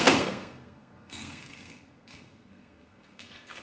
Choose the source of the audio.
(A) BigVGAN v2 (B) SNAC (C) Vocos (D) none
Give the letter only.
B